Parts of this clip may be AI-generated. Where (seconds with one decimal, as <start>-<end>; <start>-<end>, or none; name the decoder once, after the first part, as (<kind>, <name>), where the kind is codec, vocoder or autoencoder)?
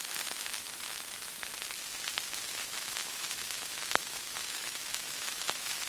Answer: 0.0-1.5 (autoencoder, DAC-VAE); 2.6-5.9